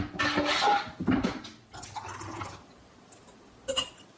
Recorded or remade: recorded